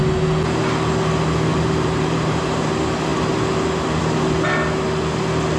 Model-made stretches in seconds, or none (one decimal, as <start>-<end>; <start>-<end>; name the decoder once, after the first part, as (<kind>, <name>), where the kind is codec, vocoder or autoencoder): 1.5-2.7 (vocoder, BigVGAN v2)